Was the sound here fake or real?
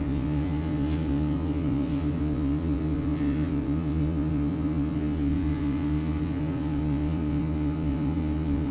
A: fake